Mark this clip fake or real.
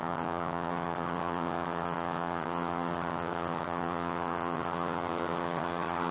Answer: fake